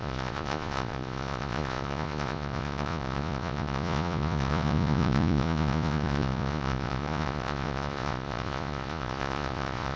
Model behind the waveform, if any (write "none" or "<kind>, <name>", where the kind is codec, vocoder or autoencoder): vocoder, Vocos